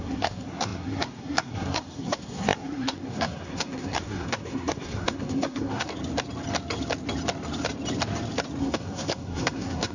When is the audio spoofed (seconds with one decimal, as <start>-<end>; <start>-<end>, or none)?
0.0-5.9; 8.6-9.9